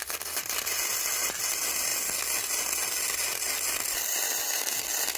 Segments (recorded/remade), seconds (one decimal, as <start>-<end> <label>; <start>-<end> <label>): 0.0-5.2 recorded